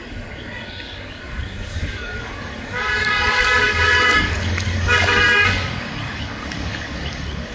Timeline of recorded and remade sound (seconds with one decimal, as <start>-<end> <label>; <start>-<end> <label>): 0.0-7.5 remade